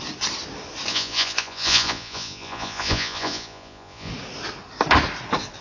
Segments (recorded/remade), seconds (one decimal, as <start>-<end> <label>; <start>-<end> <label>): 0.0-0.9 recorded; 0.9-4.1 remade; 4.1-5.6 recorded